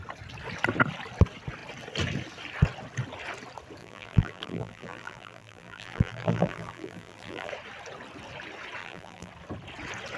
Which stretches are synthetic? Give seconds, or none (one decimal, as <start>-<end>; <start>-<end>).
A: 3.8-7.5; 8.8-9.3